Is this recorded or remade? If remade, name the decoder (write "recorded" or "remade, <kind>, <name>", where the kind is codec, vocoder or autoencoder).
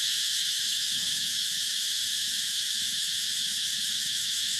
remade, autoencoder, DAC-VAE